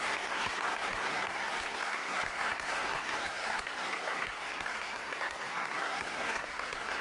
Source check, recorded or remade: remade